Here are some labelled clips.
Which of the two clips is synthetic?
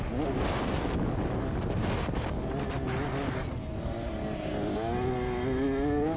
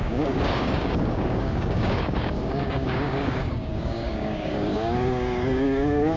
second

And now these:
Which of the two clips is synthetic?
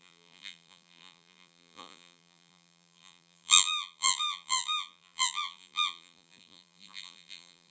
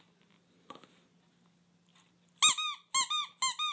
first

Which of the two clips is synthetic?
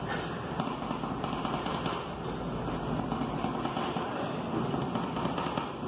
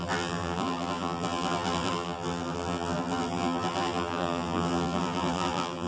second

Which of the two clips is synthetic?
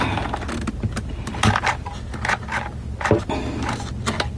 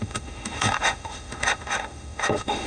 second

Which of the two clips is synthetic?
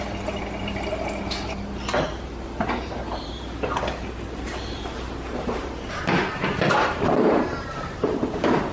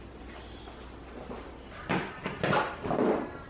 first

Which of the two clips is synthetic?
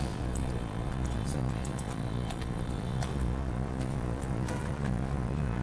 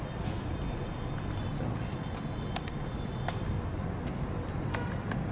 first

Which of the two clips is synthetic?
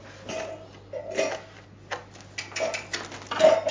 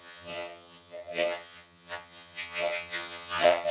second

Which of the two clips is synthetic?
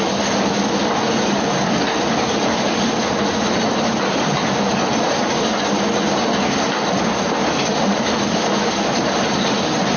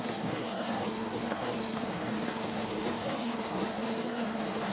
second